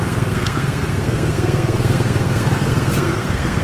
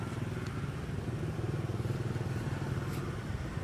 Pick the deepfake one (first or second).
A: first